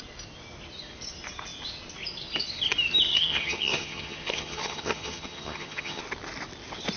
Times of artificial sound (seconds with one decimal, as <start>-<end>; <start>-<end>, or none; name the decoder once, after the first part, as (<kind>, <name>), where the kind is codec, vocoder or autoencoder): 3.1-6.0 (vocoder, HiFi-GAN)